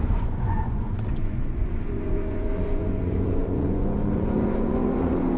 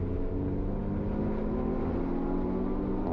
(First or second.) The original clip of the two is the second